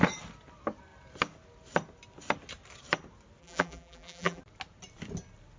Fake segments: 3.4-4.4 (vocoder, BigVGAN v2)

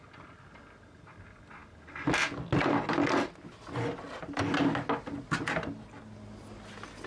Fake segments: none

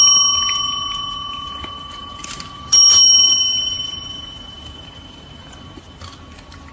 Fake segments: 2.0-5.8 (vocoder, BigVGAN v2)

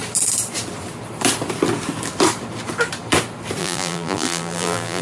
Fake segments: 3.6-5.0 (vocoder, BigVGAN v2)

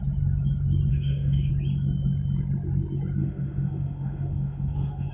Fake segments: 0.9-1.5 (autoencoder, DAC-VAE); 3.2-5.1

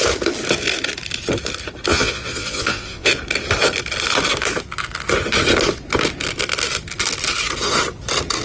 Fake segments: 1.9-3.1 (vocoder, Vocos)